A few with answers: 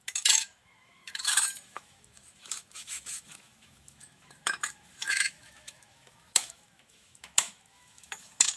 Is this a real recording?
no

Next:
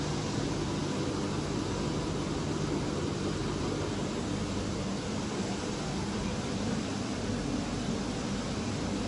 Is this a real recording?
yes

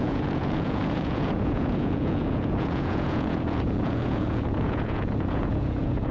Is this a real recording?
no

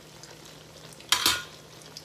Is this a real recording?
yes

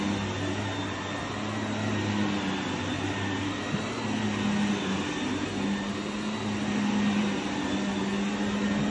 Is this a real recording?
yes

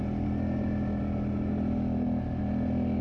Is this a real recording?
yes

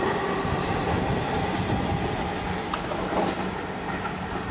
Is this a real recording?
yes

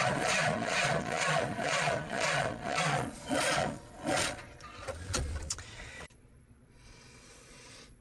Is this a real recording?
no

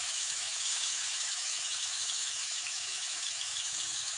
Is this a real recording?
no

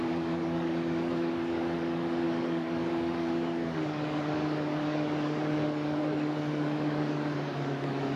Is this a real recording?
no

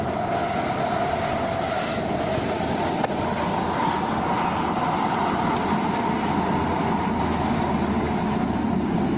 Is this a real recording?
yes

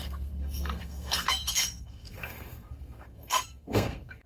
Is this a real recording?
no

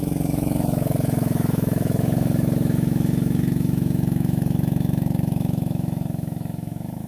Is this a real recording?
no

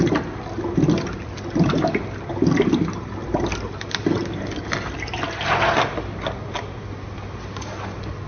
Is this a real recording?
yes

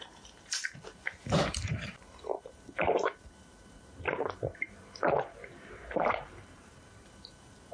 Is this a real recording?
no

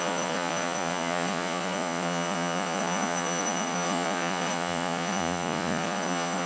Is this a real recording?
no